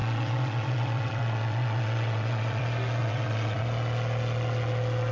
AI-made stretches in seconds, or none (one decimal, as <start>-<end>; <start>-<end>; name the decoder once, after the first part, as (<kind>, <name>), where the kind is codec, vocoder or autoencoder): 0.0-2.6 (vocoder, WaveNeXt); 3.0-3.6